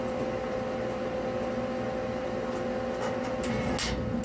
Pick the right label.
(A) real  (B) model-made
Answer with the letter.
A